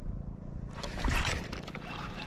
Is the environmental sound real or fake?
real